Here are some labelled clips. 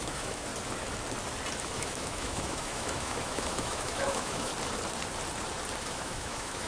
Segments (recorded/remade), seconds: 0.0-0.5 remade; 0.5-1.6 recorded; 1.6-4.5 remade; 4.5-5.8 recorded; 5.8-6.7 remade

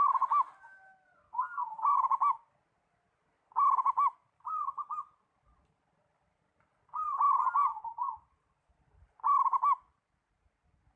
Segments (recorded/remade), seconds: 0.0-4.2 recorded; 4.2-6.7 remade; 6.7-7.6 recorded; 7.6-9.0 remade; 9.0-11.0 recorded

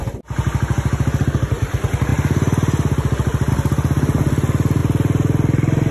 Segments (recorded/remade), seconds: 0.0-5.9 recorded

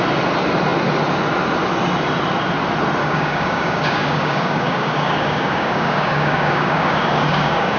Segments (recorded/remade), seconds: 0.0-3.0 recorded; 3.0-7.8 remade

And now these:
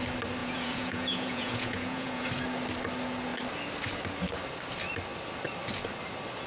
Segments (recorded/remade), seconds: 0.0-0.4 recorded; 0.4-2.3 remade; 2.3-6.5 recorded

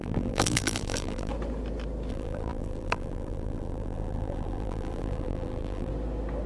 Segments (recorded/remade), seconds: 0.0-1.3 remade; 1.3-2.1 recorded; 2.1-5.9 remade; 5.9-6.5 recorded

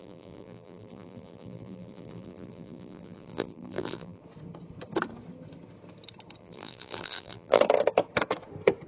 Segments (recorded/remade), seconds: 0.0-4.2 remade; 4.2-6.4 recorded; 6.4-7.6 remade; 7.6-8.9 recorded